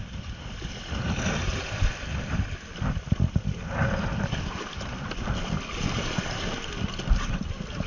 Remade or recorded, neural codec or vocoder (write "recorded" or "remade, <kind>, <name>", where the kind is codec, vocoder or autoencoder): recorded